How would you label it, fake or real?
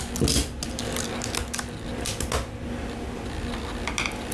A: real